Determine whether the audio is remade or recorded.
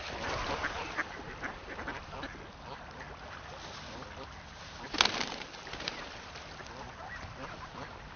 recorded